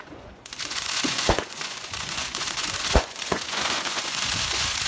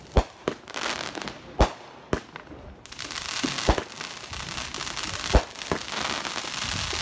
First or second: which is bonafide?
second